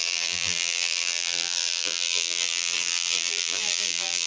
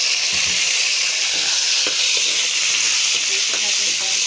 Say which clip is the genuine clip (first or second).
second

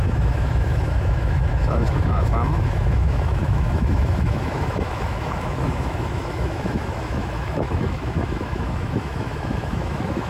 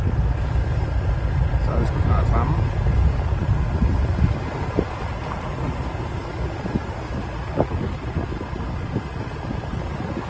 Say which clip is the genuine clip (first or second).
second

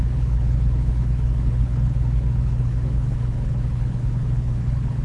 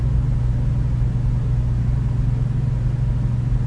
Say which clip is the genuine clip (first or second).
second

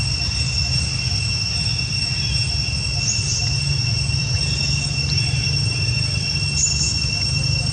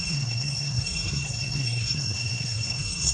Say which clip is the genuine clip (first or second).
first